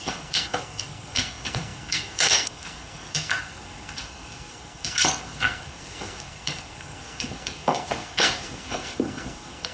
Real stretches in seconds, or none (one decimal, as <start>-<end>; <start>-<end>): none